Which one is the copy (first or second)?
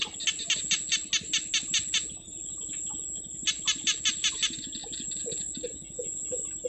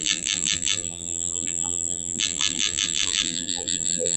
second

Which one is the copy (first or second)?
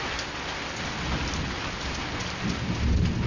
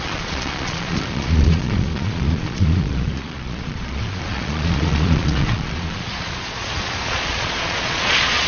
second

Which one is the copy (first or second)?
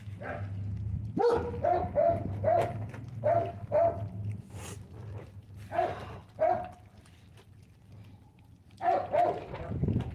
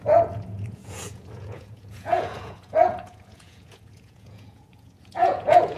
second